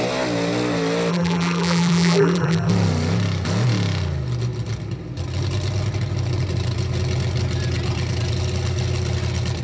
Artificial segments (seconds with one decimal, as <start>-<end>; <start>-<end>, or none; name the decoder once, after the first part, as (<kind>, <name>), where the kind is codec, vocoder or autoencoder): 1.1-2.7 (vocoder, BigVGAN v2)